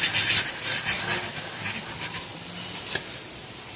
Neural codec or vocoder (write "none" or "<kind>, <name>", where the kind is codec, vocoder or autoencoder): none